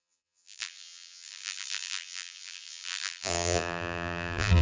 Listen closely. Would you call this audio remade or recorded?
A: remade